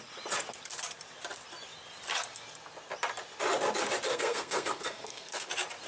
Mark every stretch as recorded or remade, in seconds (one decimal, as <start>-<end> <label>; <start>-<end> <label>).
0.0-4.1 recorded; 4.1-5.5 remade; 5.5-5.9 recorded